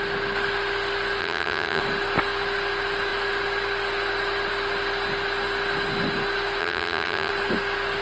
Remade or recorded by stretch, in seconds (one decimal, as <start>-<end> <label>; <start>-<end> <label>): 0.0-1.2 recorded; 1.2-1.8 remade; 1.8-6.6 recorded; 6.6-7.3 remade; 7.3-8.0 recorded